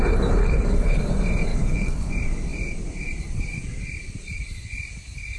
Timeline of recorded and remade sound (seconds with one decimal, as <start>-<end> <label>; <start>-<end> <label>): 0.0-0.4 recorded; 0.4-1.0 remade; 1.0-1.5 recorded; 1.5-2.1 remade; 2.1-5.4 recorded